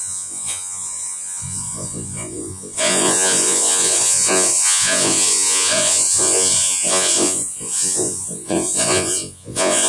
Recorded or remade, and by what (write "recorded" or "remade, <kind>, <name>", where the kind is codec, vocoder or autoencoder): remade, vocoder, Vocos